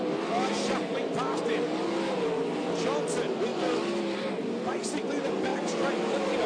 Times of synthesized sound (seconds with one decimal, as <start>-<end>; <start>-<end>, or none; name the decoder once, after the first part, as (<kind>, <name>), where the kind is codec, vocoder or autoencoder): none